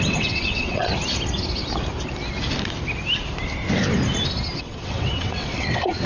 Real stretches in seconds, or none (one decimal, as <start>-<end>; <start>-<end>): 0.9-4.6